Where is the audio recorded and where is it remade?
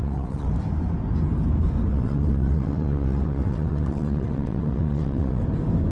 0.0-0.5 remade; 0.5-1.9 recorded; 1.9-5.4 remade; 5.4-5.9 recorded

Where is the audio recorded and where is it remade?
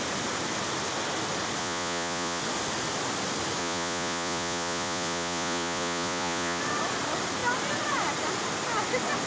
0.0-1.6 recorded; 1.6-2.4 remade; 2.4-3.6 recorded; 3.6-6.6 remade; 6.6-9.3 recorded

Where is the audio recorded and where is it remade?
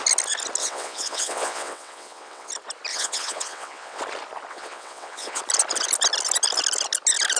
0.0-0.6 recorded; 0.6-2.5 remade; 2.5-2.9 recorded; 2.9-4.0 remade; 4.0-4.5 recorded; 4.5-5.4 remade; 5.4-7.4 recorded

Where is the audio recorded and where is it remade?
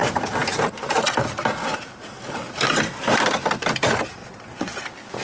0.0-4.2 recorded; 4.2-4.8 remade; 4.8-5.2 recorded